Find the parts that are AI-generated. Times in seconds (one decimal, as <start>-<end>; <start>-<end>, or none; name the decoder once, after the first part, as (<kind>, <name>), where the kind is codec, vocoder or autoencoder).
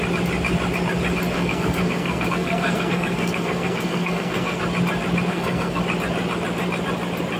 1.3-4.6 (codec, SNAC); 5.3-5.8